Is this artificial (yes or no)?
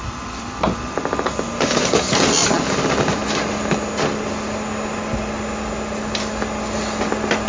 no